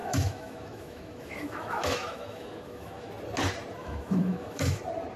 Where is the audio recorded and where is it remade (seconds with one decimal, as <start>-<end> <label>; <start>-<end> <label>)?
0.0-3.1 remade; 3.1-3.8 recorded; 3.8-4.8 remade; 4.8-5.2 recorded